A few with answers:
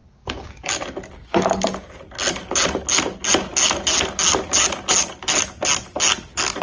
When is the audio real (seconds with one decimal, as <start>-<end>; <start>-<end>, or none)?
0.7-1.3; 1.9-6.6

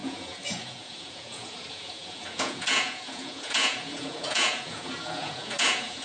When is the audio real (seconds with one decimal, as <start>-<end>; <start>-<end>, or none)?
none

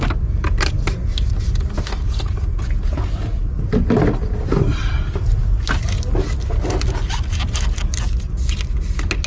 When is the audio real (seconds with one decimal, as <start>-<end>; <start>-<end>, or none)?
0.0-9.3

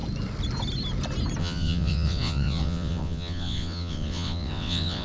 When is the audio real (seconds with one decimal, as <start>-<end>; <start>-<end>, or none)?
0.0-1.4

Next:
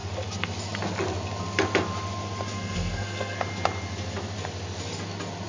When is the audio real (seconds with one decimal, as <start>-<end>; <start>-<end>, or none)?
0.0-2.5; 3.4-5.5

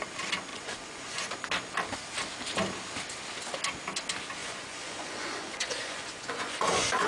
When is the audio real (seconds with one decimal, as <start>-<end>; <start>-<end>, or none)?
0.0-0.5; 1.3-4.4

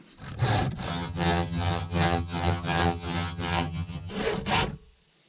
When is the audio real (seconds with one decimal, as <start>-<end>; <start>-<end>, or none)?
0.0-0.9; 4.1-5.3

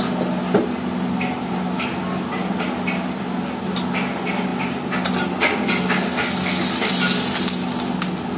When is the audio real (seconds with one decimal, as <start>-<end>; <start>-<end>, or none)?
0.0-8.4